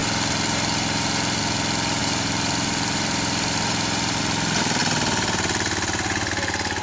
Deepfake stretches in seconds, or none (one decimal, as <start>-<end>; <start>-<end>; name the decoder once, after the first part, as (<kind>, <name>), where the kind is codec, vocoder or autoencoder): 0.0-1.4 (vocoder, BigVGAN v2); 2.0-4.2; 4.8-6.3